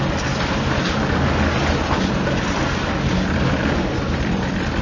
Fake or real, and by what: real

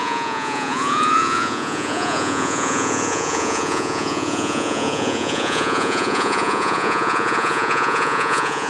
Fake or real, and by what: fake, vocoder, Vocos